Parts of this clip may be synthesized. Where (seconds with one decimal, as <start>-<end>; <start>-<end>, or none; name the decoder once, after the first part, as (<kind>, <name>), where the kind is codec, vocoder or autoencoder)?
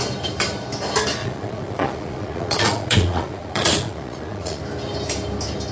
1.2-4.6 (vocoder, Vocos)